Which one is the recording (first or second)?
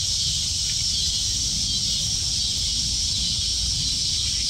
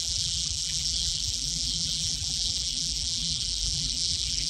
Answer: first